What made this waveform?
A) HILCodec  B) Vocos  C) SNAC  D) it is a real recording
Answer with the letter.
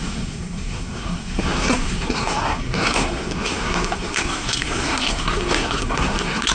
C